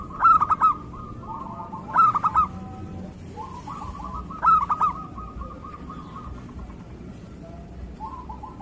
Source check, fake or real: real